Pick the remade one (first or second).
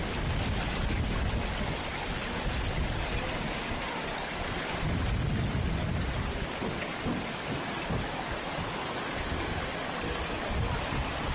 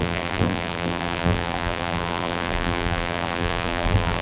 second